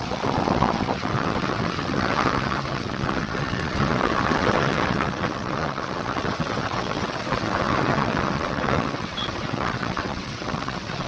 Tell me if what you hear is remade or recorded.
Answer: remade